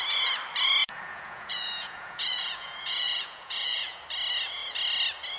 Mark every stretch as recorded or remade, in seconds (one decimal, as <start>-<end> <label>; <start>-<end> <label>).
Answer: 0.0-0.8 recorded; 0.8-4.0 remade; 4.0-5.4 recorded